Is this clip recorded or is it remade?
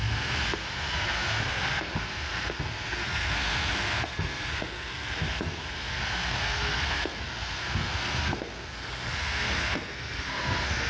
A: remade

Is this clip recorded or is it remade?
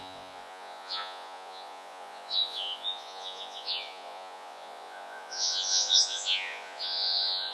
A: remade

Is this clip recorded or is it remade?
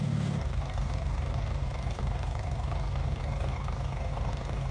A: remade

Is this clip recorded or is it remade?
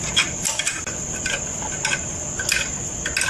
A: recorded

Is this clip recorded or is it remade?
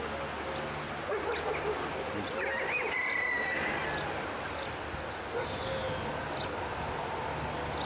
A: recorded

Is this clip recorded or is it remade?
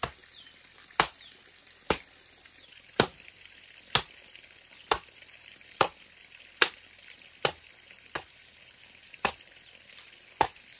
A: remade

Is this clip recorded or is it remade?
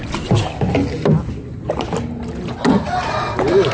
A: recorded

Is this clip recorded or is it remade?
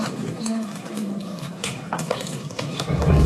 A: remade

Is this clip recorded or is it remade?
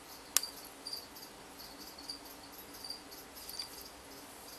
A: recorded